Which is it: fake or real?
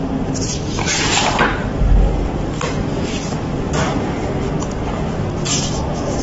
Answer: real